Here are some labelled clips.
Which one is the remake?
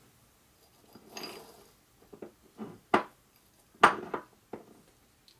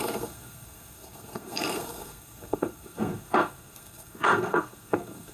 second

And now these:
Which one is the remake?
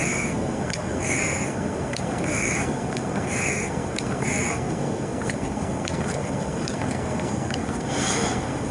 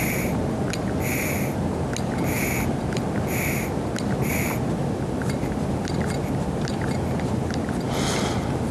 first